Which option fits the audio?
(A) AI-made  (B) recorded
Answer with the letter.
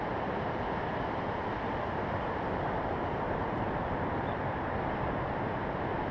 B